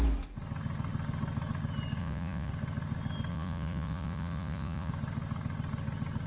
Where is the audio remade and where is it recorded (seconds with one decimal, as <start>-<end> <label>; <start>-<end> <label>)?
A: 0.0-2.0 recorded; 2.0-2.5 remade; 2.5-3.3 recorded; 3.3-4.9 remade; 4.9-6.3 recorded